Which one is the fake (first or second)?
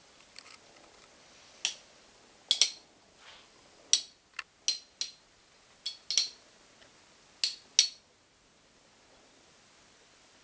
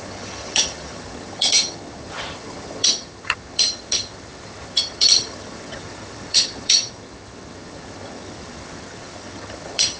second